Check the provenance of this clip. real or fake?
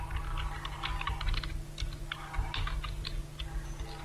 real